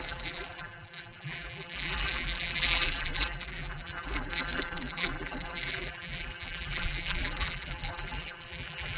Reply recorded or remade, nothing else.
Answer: remade